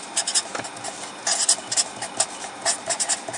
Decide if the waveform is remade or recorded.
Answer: recorded